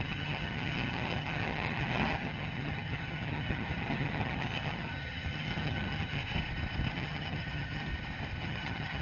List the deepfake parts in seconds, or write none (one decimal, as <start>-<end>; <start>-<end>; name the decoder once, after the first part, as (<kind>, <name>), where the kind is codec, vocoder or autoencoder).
0.0-6.2 (vocoder, HiFi-GAN); 6.9-7.9; 8.4-9.0